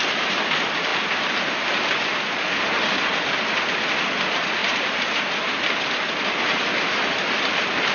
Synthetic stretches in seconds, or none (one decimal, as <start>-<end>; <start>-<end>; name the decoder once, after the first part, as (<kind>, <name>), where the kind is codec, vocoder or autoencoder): 4.6-5.6 (vocoder, BigVGAN v2)